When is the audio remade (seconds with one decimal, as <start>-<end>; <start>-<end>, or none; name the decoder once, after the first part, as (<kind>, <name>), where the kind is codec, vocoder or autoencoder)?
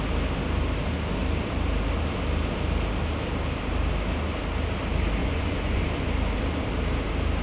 5.2-5.8 (vocoder, Vocos)